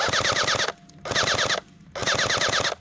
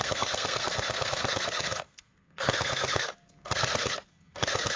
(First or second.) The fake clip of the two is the second